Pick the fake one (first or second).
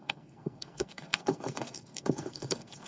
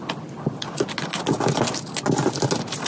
first